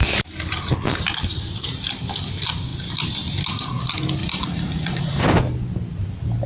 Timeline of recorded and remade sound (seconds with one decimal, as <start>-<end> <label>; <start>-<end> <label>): 0.0-4.2 recorded; 4.2-5.2 remade; 5.2-6.5 recorded